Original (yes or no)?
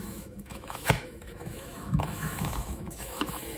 no